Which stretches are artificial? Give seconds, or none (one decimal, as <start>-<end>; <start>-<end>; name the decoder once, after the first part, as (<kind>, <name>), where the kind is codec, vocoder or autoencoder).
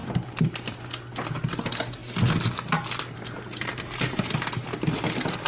none